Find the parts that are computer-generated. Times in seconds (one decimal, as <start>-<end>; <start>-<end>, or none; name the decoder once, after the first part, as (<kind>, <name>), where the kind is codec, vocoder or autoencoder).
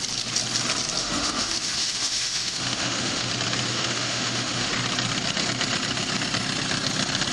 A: 1.0-3.3 (autoencoder, DAC-VAE); 3.7-4.7